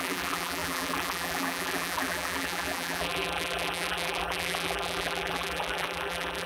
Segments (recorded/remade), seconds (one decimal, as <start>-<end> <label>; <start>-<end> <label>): 0.0-6.5 remade